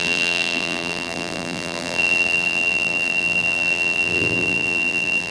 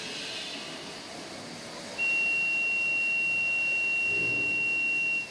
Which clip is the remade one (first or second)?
first